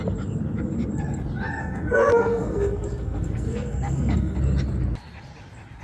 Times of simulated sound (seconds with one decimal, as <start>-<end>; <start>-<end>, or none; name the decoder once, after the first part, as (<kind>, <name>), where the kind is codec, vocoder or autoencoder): 1.6-4.4 (codec, SNAC)

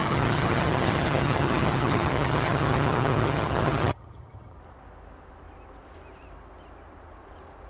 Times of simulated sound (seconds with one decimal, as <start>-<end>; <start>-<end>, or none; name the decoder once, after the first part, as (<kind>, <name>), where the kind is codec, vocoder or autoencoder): 0.0-4.6 (vocoder, HiFi-GAN)

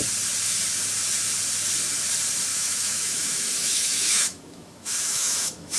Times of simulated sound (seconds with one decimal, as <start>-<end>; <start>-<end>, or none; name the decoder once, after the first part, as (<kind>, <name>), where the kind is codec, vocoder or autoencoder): 2.5-5.8 (autoencoder, DAC-VAE)

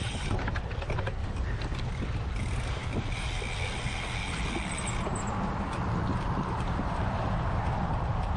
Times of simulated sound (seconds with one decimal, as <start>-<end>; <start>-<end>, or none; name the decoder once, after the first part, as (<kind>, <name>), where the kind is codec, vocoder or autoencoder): 0.0-1.2 (vocoder, BigVGAN v2); 6.2-8.4

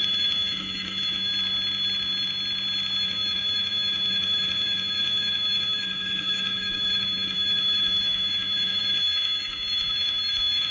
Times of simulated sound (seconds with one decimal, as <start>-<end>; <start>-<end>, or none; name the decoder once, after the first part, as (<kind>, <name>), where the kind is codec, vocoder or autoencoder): 0.0-1.3 (autoencoder, DAC-VAE); 3.0-10.7